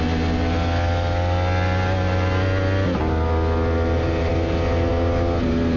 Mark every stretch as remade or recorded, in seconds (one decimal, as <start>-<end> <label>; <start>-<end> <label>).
0.0-5.8 recorded